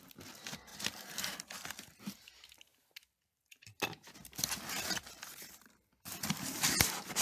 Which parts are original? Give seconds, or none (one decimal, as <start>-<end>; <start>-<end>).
0.0-7.2